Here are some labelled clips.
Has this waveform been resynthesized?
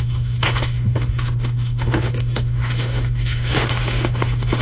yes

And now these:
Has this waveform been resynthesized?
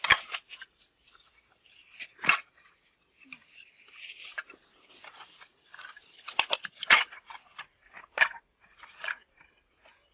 no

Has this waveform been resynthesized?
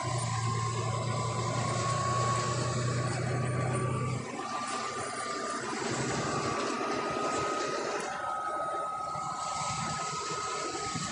no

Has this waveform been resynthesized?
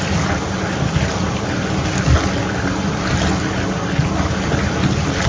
no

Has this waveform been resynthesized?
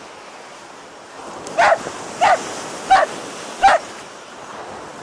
no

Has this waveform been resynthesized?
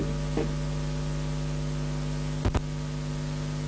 no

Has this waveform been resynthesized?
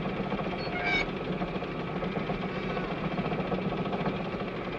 no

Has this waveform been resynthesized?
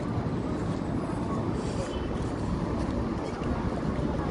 no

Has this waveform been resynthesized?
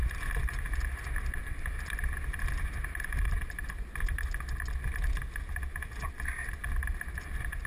no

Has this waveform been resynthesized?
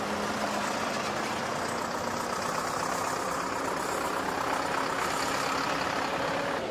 no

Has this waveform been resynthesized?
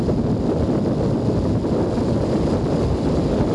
no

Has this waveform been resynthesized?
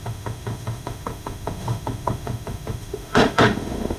yes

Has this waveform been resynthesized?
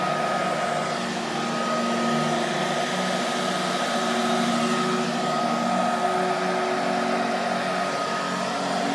no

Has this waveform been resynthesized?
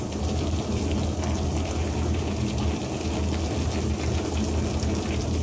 no